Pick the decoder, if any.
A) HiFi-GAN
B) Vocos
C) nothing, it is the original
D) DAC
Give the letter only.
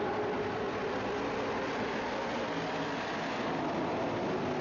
C